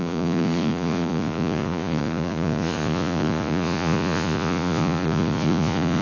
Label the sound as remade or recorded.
remade